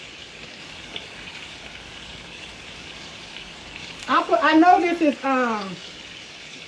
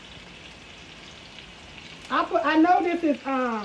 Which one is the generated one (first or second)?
first